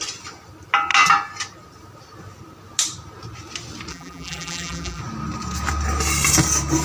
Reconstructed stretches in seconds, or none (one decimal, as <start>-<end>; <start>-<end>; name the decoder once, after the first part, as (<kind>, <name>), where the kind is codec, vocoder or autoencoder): 3.9-5.0 (vocoder, BigVGAN v2)